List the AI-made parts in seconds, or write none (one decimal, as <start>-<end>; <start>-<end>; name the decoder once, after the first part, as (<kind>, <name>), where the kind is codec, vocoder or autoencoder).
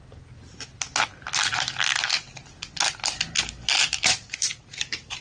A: 3.8-5.2 (vocoder, BigVGAN v2)